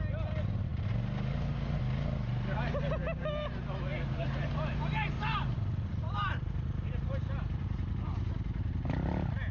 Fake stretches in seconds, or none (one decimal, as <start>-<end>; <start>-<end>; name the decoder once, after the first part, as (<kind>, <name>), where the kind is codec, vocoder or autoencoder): 3.9-7.9 (vocoder, BigVGAN v2)